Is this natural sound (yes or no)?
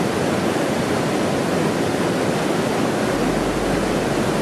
yes